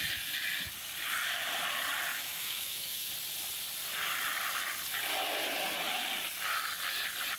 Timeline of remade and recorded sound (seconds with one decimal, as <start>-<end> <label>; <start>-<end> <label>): 0.0-2.1 recorded; 2.1-3.1 remade; 3.1-7.4 recorded